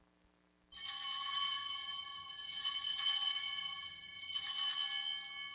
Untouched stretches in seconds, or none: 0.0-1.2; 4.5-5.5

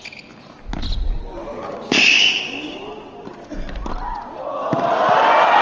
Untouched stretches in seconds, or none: 0.0-1.5; 2.9-5.6

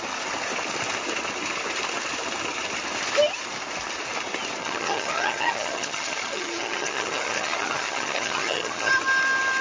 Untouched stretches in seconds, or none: 0.0-4.6; 8.9-9.6

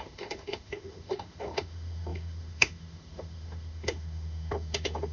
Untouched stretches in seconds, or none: none

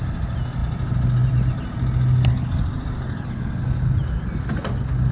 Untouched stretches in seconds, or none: 0.0-5.1

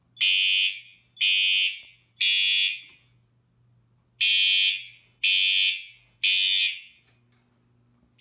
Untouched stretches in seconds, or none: 0.0-8.2

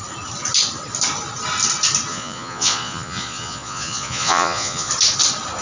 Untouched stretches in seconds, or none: 0.0-2.1; 4.9-5.6